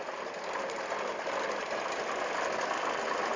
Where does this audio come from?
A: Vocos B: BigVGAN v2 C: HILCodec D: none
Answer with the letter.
D